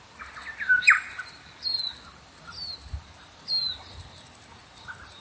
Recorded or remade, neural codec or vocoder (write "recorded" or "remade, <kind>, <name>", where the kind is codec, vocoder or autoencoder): recorded